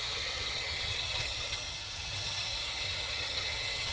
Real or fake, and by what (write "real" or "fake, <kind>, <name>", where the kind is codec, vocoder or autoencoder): fake, vocoder, HiFi-GAN